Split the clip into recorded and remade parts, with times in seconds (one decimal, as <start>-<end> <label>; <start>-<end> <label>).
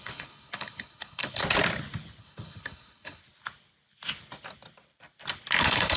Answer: 0.0-1.4 remade; 1.4-2.2 recorded; 2.2-3.2 remade; 3.2-5.6 recorded; 5.6-6.0 remade